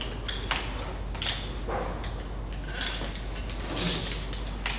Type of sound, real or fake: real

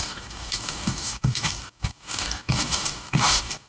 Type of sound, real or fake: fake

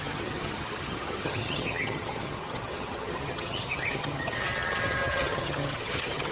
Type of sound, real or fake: fake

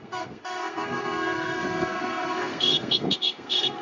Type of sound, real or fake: fake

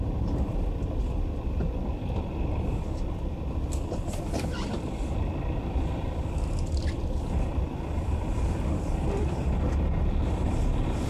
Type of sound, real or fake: fake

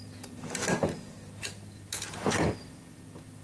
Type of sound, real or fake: real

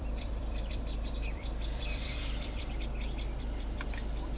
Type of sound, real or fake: fake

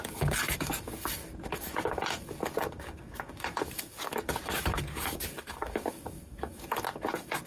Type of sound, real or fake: fake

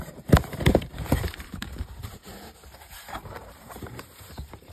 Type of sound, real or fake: fake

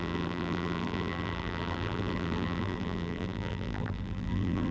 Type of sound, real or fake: fake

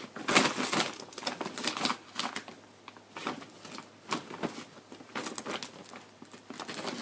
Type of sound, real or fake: real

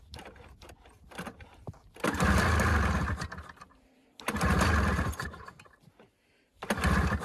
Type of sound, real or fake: real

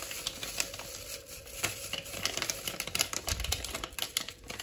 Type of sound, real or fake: real